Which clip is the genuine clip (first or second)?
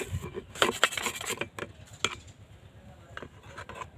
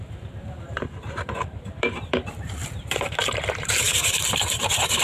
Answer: first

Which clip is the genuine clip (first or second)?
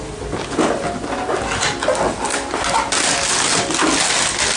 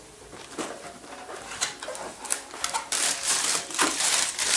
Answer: first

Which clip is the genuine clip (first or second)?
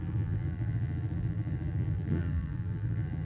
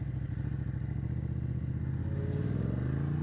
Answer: second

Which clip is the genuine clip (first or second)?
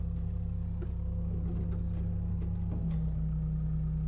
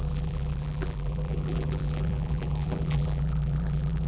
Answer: first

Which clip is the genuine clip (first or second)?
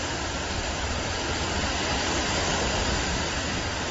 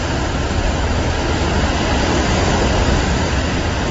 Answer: second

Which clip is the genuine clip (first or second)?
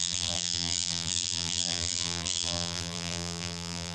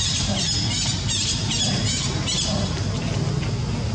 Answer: second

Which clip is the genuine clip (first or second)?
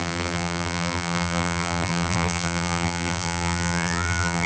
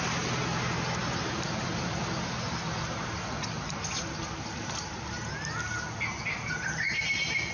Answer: second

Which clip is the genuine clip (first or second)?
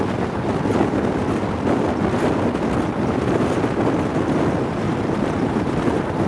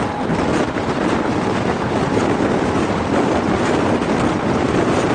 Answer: first